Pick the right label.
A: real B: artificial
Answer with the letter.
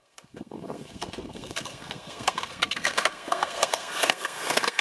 B